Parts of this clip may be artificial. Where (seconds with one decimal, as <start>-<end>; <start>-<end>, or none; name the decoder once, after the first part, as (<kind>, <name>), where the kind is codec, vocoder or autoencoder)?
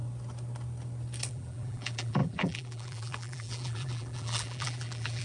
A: 1.3-5.2 (vocoder, BigVGAN v2)